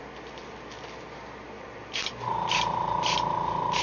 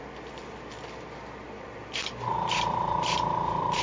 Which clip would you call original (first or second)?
first